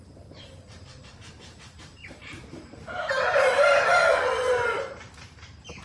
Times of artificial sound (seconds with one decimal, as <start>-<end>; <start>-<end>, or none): 0.0-5.8